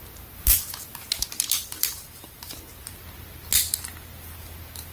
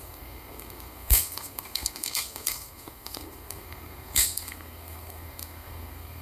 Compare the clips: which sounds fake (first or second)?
second